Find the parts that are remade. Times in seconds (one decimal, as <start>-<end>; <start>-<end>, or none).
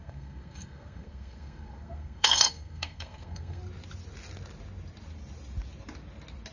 0.0-3.6